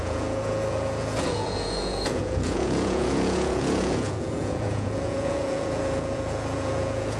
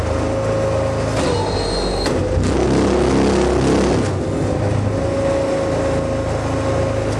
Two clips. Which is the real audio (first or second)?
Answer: second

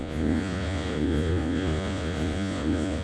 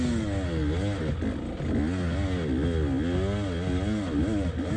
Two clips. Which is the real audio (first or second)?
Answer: second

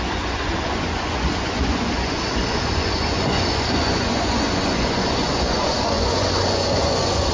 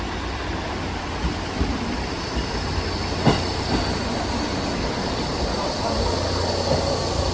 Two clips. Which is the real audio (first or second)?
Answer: second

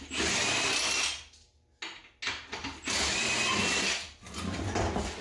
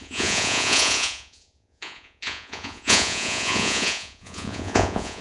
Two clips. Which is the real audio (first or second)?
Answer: first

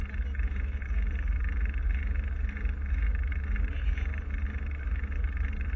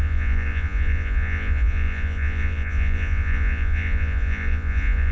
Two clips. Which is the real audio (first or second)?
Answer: first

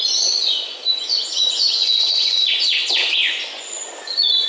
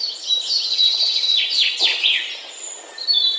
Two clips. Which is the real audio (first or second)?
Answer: second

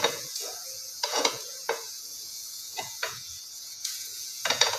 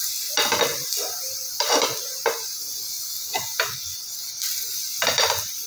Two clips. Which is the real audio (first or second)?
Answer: second